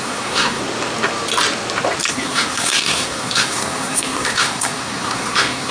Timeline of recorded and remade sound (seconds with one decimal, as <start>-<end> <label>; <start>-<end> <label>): 0.0-0.6 remade; 0.6-2.1 recorded; 2.1-5.7 remade